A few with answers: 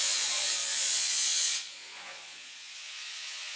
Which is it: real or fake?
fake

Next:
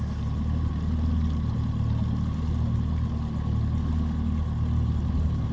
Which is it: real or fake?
real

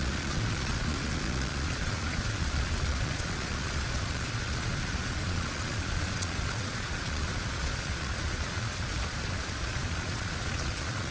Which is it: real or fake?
fake